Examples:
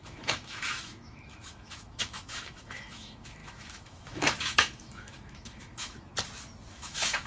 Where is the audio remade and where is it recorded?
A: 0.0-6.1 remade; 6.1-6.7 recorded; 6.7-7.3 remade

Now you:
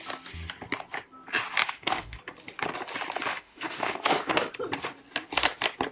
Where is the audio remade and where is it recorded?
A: 0.0-1.6 recorded; 1.6-2.2 remade; 2.2-3.3 recorded; 3.3-4.5 remade; 4.5-5.9 recorded

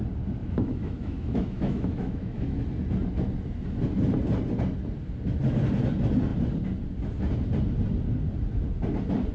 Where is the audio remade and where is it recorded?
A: 0.0-0.4 recorded; 0.4-2.6 remade; 2.6-9.3 recorded

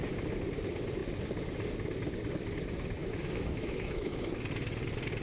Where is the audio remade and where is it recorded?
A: 0.0-3.0 recorded; 3.0-4.3 remade; 4.3-5.2 recorded

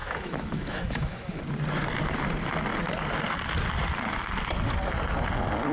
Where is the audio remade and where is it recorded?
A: 0.0-1.4 remade; 1.4-5.7 recorded

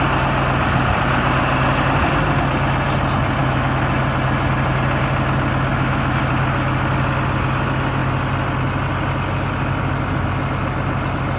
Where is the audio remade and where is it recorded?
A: 0.0-3.4 recorded; 3.4-3.9 remade; 3.9-5.7 recorded; 5.7-6.2 remade; 6.2-11.4 recorded

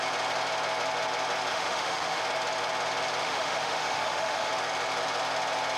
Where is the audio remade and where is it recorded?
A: 0.0-1.5 recorded; 1.5-2.2 remade; 2.2-3.2 recorded; 3.2-4.5 remade; 4.5-5.8 recorded

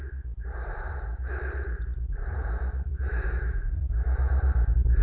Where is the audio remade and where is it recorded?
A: 0.0-2.9 recorded; 2.9-4.3 remade; 4.3-5.0 recorded